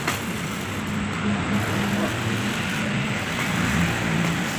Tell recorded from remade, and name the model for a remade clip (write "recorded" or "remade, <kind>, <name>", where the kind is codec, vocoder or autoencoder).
recorded